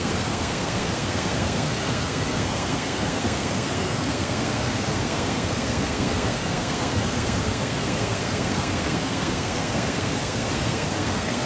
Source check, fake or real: fake